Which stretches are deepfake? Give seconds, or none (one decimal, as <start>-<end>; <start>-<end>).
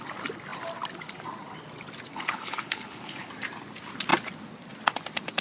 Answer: 2.1-3.3